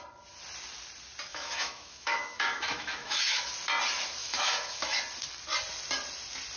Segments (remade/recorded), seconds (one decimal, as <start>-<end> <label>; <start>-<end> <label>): 0.0-1.3 recorded; 1.3-3.5 remade; 3.5-4.2 recorded; 4.2-5.0 remade; 5.0-6.6 recorded